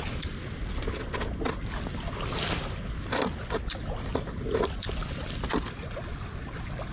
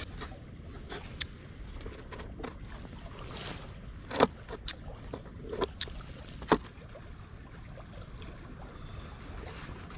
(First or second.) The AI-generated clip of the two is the second